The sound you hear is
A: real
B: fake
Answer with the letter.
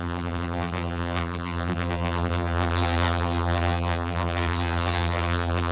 B